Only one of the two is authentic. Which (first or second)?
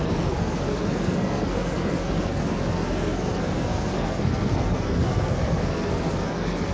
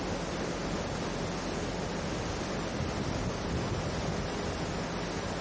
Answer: second